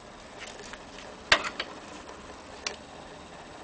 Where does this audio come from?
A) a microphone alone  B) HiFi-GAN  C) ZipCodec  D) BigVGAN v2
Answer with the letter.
A